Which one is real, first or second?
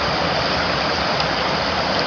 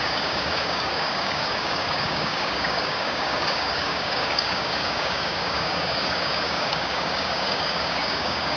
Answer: first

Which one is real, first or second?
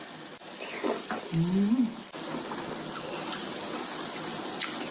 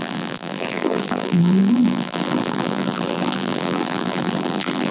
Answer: first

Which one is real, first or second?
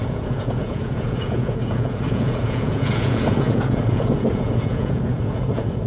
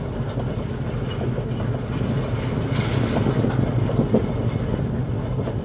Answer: second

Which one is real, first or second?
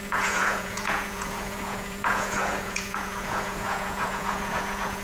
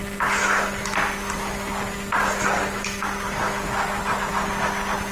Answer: second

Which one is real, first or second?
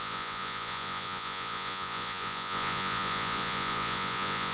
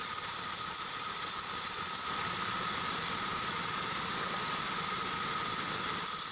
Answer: second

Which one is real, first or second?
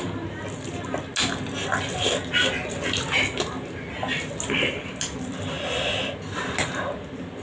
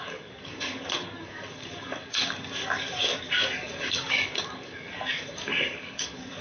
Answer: first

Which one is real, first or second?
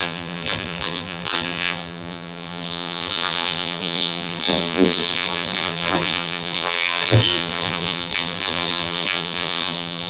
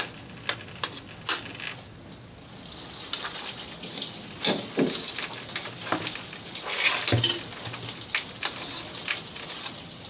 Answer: second